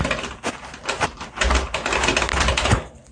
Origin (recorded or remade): recorded